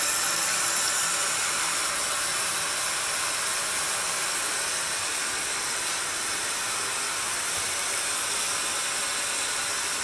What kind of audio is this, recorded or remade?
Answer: recorded